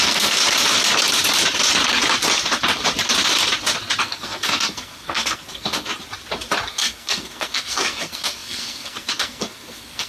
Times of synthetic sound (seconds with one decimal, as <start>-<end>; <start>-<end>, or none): 0.0-0.4; 4.0-5.9; 6.7-10.1